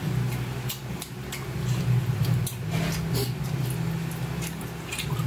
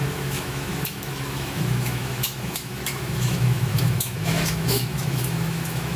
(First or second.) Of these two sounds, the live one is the first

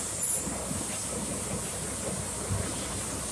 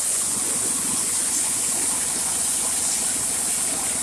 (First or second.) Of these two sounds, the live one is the first